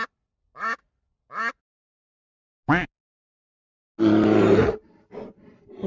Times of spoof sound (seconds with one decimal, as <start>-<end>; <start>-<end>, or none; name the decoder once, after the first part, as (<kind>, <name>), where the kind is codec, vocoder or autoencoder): none